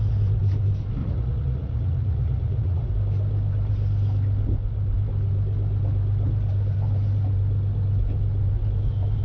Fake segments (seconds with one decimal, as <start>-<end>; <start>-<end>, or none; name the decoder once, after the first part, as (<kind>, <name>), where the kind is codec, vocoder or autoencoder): 1.0-2.9 (vocoder, Vocos)